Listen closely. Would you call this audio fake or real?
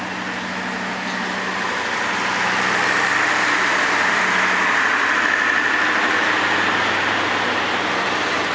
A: real